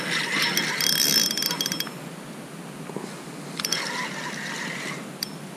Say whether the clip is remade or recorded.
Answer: recorded